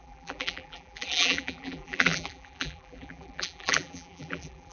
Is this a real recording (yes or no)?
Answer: no